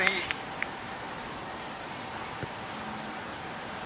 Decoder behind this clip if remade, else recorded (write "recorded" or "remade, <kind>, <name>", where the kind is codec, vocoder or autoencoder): recorded